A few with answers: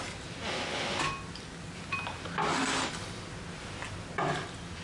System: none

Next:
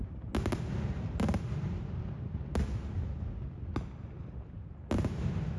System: none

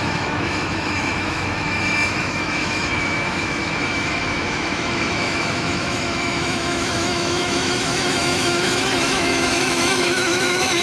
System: autoencoder, DAC-VAE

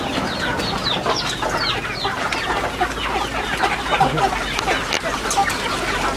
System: none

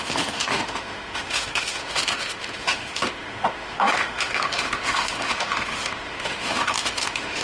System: autoencoder, DAC-VAE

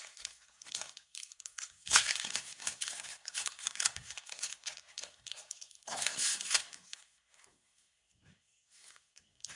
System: codec, SNAC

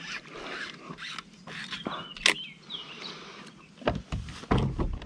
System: none